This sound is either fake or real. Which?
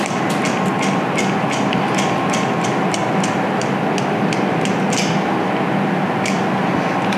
real